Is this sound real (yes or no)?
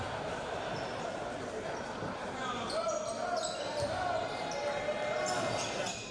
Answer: yes